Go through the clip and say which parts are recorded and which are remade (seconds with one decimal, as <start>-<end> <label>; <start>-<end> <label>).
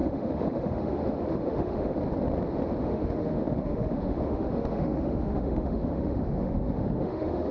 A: 0.0-2.0 remade; 2.0-2.8 recorded; 2.8-7.5 remade